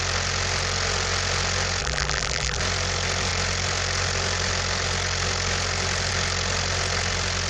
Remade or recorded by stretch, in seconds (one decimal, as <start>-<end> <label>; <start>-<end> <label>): 0.0-1.8 recorded; 1.8-2.6 remade; 2.6-7.5 recorded